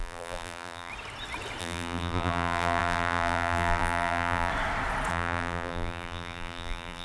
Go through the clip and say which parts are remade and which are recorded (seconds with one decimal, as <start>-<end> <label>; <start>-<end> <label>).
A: 0.0-0.9 remade; 0.9-1.6 recorded; 1.6-4.5 remade; 4.5-5.1 recorded; 5.1-7.0 remade